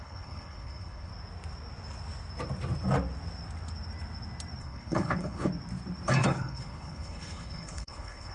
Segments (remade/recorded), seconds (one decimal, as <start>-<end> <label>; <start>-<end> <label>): 0.0-1.1 remade; 1.1-4.6 recorded; 4.6-5.5 remade; 5.5-6.2 recorded; 6.2-8.3 remade